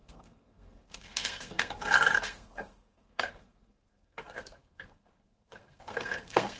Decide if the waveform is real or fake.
fake